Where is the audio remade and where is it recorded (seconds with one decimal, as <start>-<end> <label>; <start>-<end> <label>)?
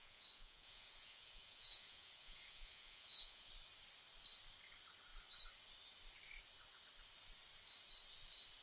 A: 0.0-3.5 remade; 3.5-8.6 recorded